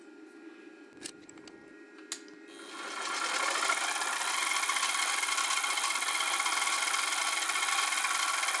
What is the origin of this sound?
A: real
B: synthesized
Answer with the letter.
A